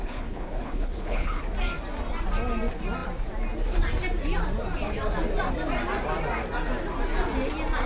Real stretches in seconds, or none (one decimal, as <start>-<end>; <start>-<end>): 1.4-7.9